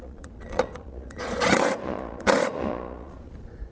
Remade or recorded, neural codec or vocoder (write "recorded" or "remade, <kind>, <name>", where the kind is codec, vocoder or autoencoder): remade, vocoder, Vocos